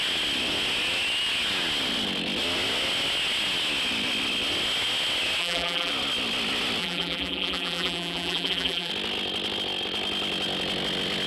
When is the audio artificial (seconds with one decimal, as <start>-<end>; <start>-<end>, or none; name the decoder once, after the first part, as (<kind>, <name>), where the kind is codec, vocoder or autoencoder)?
5.4-5.9 (vocoder, BigVGAN v2); 6.8-8.9

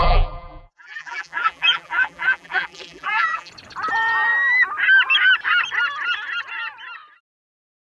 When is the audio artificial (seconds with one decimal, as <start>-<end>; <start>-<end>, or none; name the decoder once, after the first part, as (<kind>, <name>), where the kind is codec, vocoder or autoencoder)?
0.0-3.5 (vocoder, BigVGAN v2)

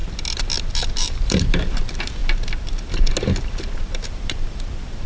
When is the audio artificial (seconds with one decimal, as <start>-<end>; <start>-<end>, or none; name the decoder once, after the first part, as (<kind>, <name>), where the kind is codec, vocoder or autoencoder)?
0.6-2.2 (vocoder, BigVGAN v2); 3.7-5.1

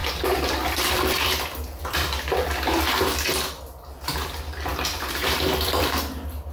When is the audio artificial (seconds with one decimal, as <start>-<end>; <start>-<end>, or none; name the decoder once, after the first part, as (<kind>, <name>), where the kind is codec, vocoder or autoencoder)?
0.0-2.4 (vocoder, BigVGAN v2); 4.7-5.8

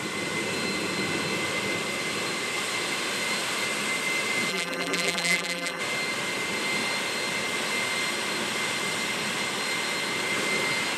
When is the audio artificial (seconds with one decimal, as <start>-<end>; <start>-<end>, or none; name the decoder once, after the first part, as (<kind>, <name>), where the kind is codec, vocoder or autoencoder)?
4.5-5.8 (vocoder, BigVGAN v2)